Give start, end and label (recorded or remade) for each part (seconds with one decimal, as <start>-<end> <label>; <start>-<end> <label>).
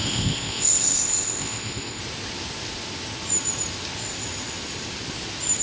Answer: 0.0-2.0 remade; 2.0-5.6 recorded